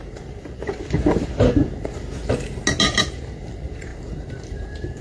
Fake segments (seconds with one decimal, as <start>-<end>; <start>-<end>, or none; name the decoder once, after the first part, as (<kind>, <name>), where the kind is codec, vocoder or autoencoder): 0.0-2.2 (vocoder, BigVGAN v2); 2.8-5.0